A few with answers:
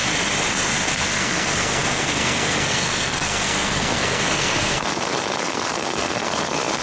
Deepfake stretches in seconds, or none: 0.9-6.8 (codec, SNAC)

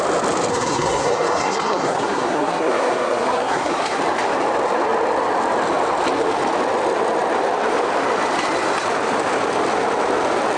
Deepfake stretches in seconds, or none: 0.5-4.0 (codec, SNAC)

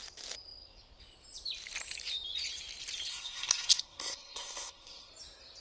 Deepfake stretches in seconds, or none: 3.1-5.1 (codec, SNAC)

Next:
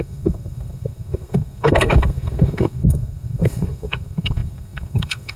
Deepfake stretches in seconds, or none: 0.0-5.4 (codec, SNAC)

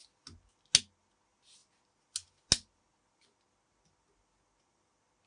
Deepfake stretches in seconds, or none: none

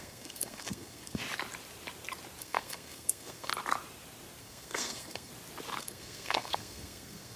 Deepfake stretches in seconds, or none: 0.0-1.2 (codec, SNAC); 2.4-3.5; 4.4-5.3; 5.8-7.4

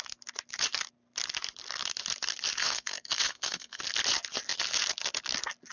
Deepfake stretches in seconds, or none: 2.6-3.8 (codec, SNAC)

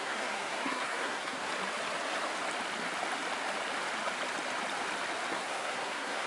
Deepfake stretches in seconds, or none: 0.0-1.5 (codec, SNAC); 5.3-6.3